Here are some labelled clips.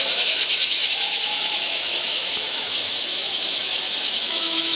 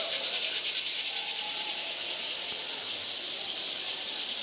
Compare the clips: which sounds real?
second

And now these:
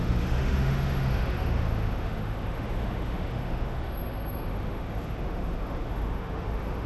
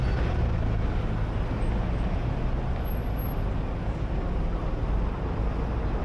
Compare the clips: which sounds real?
second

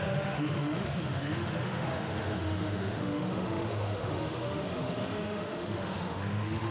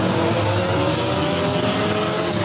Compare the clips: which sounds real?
second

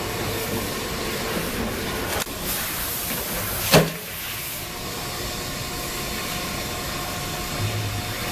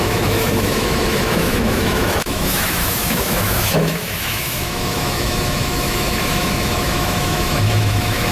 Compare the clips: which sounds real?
first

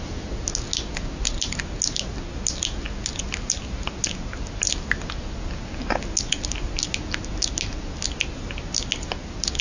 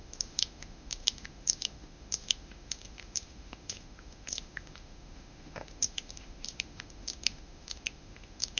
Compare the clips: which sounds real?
first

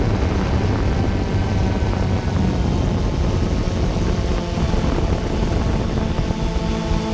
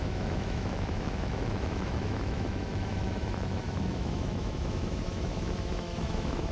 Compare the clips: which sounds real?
first